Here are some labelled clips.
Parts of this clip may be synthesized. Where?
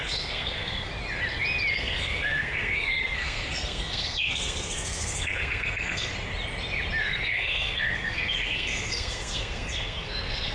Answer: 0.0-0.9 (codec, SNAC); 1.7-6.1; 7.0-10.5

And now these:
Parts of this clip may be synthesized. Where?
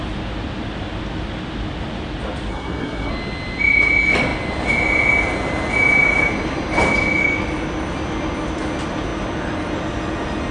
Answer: 2.5-3.1 (codec, SNAC)